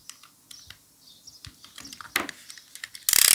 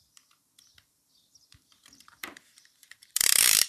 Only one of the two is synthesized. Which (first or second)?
second